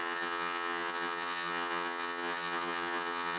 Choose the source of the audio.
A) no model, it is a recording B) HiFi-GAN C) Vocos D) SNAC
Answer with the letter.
B